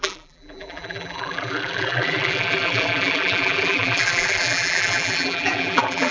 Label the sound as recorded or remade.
remade